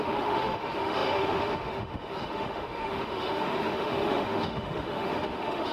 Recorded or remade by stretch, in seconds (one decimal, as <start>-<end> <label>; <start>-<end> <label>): 0.0-5.7 remade